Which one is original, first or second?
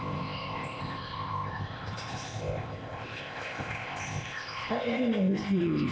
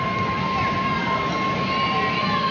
second